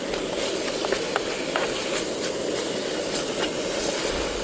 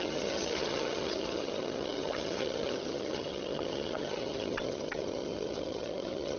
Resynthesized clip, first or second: second